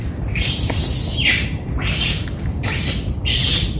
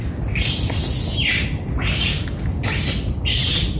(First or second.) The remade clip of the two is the first